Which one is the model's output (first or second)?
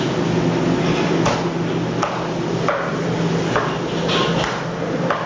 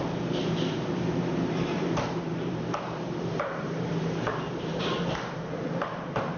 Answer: second